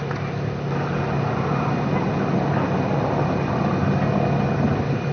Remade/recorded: recorded